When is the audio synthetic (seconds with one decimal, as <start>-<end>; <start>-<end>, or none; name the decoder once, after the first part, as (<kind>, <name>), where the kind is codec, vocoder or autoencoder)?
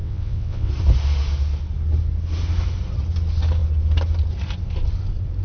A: 0.0-0.7 (vocoder, WaveNeXt)